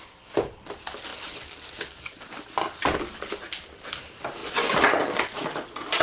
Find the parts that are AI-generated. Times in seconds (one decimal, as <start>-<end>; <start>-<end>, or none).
none